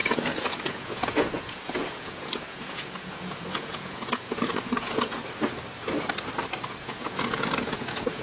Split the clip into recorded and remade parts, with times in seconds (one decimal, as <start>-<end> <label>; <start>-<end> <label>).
0.0-5.2 remade; 5.2-6.8 recorded; 6.8-8.2 remade